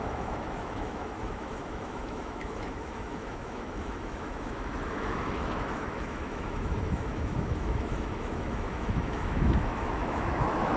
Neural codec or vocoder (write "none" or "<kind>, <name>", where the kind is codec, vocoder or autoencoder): autoencoder, DAC-VAE